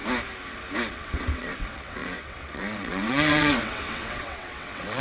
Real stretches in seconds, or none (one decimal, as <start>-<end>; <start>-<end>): 0.0-0.9